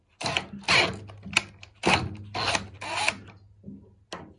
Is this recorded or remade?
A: recorded